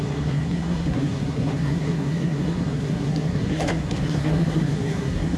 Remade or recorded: remade